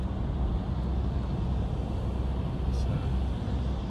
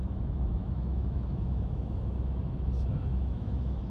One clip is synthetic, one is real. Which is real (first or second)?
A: first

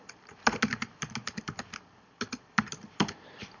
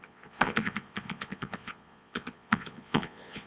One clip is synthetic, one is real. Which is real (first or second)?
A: first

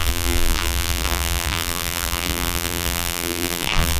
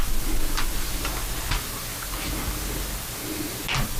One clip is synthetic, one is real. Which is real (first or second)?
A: second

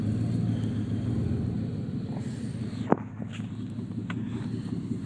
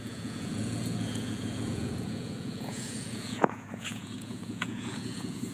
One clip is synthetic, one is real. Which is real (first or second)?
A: first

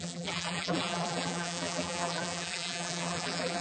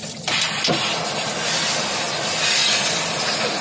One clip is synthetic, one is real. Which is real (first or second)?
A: second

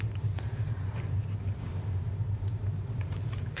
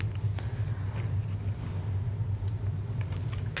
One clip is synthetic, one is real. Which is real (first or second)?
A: second